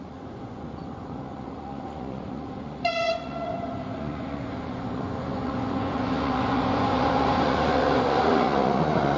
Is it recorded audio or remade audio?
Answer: remade